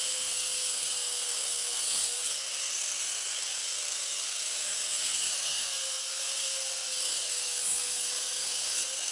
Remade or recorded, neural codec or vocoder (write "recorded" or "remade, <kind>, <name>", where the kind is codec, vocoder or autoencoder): remade, codec, SNAC